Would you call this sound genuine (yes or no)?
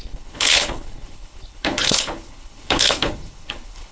no